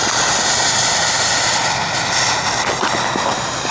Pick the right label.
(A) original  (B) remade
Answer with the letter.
A